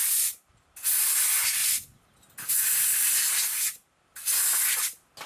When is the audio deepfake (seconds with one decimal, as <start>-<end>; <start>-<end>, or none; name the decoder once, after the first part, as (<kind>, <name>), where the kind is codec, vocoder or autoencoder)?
none